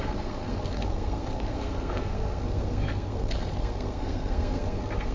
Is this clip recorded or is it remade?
remade